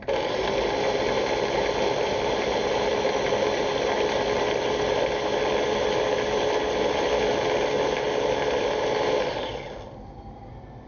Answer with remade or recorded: recorded